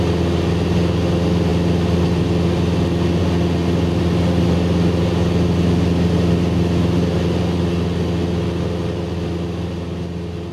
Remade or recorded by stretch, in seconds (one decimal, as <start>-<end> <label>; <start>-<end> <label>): 0.0-10.5 recorded